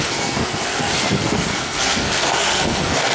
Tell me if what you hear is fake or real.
fake